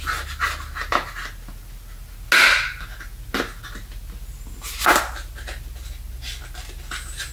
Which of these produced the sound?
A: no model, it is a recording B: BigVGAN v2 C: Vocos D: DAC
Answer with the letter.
A